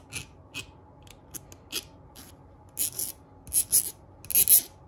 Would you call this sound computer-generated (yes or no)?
no